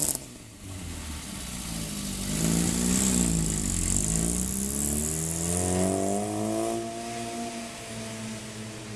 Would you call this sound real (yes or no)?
yes